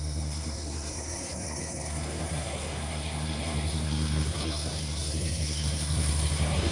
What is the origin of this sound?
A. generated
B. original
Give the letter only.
A